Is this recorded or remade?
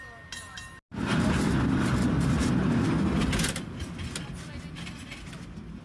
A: recorded